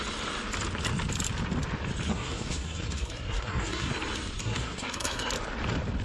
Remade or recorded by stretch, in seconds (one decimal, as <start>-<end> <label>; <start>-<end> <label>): 0.0-2.1 recorded; 2.1-3.9 remade; 3.9-4.4 recorded; 4.4-5.3 remade; 5.3-6.0 recorded